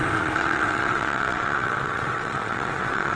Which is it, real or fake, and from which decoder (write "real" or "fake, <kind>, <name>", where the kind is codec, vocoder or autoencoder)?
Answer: fake, vocoder, WaveNeXt